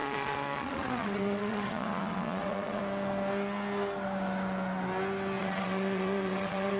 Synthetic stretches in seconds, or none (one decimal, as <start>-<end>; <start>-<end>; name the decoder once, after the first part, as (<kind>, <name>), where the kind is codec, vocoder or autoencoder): 0.0-2.8 (vocoder, Vocos); 5.4-6.8